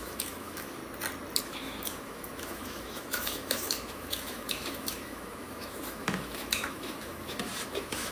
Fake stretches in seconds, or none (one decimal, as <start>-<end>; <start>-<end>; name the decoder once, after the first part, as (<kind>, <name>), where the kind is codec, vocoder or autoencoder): 0.0-0.8 (autoencoder, DAC-VAE); 1.4-8.1